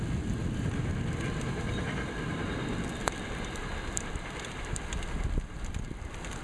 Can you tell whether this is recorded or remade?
recorded